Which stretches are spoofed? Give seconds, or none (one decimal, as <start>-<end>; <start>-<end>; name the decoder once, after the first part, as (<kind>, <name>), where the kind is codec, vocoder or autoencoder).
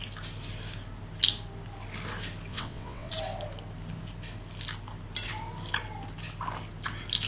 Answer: 2.5-3.1 (vocoder, WaveNeXt)